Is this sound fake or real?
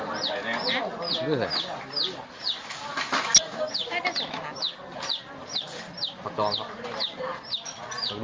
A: real